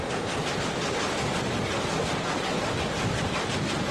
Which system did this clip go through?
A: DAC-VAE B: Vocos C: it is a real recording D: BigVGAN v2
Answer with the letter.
C